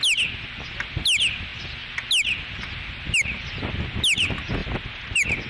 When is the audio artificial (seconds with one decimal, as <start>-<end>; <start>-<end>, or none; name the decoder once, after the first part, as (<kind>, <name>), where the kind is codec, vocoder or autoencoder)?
none